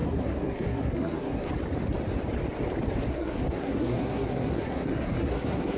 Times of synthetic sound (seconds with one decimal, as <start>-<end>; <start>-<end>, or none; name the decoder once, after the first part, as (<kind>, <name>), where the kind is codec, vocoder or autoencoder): 0.0-1.5 (codec, SNAC); 3.1-5.8